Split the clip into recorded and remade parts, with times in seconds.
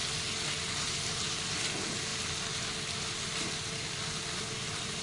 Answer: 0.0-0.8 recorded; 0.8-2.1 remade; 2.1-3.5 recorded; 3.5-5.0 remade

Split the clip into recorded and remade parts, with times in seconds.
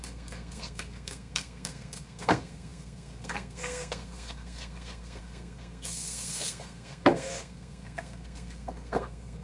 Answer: 0.0-9.4 remade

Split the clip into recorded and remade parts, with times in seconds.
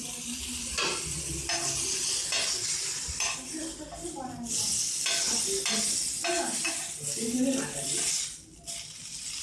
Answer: 0.0-2.8 recorded; 2.8-3.8 remade; 3.8-9.4 recorded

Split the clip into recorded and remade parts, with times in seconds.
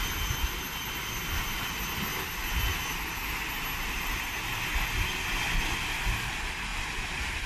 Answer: 0.0-7.5 recorded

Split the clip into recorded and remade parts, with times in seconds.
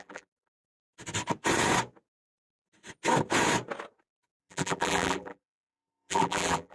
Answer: 0.0-0.7 remade; 0.7-4.4 recorded; 4.4-6.7 remade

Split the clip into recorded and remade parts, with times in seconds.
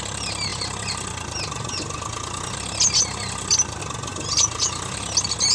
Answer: 0.0-5.5 recorded